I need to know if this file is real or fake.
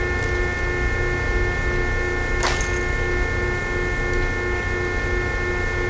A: real